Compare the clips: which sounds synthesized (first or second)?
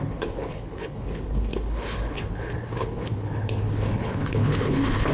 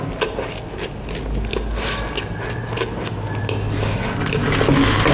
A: first